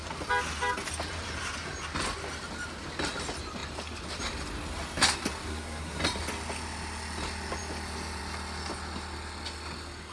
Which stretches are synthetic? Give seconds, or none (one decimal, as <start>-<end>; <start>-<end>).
5.5-6.0